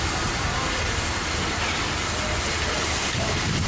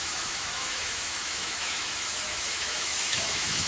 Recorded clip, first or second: first